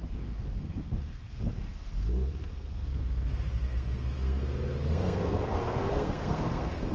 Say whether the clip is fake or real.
fake